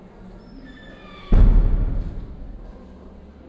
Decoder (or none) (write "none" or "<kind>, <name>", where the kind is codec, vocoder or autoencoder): none